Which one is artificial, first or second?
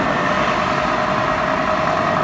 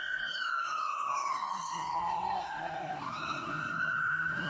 second